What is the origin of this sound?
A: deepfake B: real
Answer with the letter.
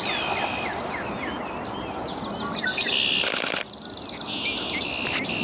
B